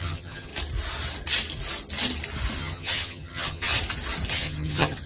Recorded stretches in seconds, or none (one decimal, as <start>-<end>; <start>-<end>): 0.5-2.6; 3.7-4.3